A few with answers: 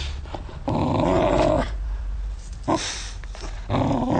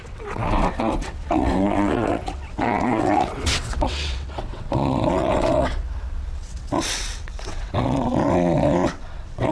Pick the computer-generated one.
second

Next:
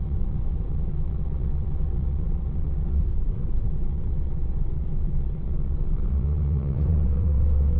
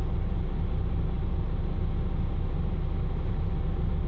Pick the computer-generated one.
first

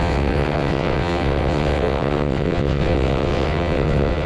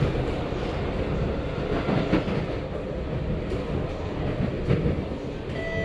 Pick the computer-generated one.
first